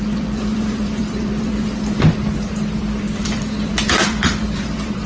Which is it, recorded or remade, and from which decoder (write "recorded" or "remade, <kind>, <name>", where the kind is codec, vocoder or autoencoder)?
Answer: remade, vocoder, BigVGAN v2